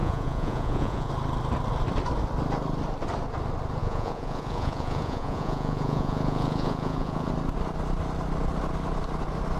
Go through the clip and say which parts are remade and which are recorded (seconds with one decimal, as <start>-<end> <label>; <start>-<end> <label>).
0.0-1.1 remade; 1.1-3.8 recorded; 3.8-7.3 remade; 7.3-9.6 recorded